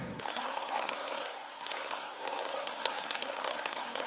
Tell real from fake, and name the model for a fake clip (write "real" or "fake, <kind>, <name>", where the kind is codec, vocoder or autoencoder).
fake, codec, SNAC